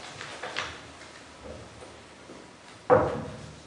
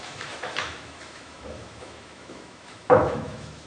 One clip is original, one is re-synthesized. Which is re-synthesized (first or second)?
second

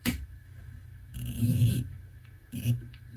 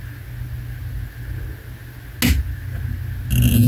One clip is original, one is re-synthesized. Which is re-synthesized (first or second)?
first